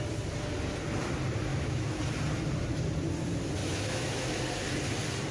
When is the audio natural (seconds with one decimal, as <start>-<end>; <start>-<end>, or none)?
0.0-1.5; 2.0-3.6; 4.4-5.3